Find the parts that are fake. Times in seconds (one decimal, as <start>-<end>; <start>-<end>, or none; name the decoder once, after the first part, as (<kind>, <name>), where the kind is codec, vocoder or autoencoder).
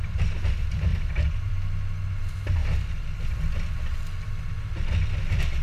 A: 0.9-1.5 (vocoder, BigVGAN v2); 2.6-3.2